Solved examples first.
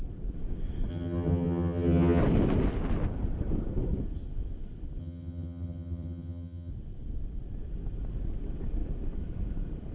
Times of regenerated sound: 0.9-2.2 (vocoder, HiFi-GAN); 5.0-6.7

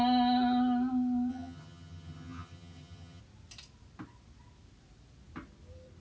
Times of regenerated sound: 1.3-3.2 (vocoder, HiFi-GAN)

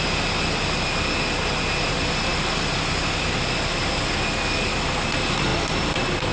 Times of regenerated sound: none

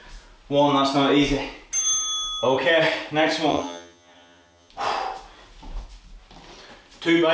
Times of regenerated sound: 3.5-4.7 (vocoder, HiFi-GAN)